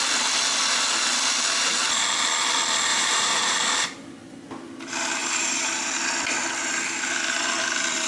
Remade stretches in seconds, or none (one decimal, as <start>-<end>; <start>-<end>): 2.9-3.5; 5.2-5.9